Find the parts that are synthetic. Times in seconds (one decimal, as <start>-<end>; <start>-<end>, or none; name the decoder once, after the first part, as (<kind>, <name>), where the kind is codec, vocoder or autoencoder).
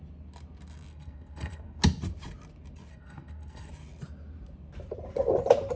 0.9-1.8 (codec, SNAC); 2.9-3.7